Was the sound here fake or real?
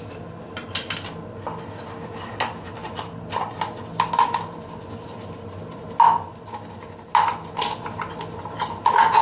real